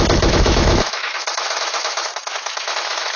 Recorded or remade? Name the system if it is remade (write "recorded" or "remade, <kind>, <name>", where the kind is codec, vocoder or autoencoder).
remade, autoencoder, DAC-VAE